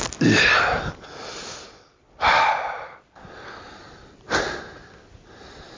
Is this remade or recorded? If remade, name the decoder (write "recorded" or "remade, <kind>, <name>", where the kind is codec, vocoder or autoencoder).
recorded